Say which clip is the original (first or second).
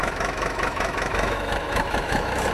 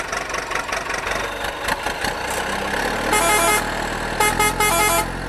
second